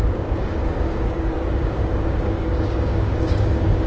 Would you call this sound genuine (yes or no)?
no